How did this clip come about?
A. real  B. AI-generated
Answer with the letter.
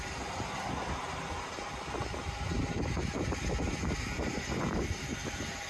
A